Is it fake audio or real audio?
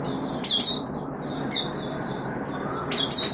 real